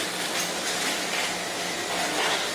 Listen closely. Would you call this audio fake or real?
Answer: real